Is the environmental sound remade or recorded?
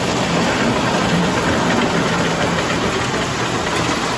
recorded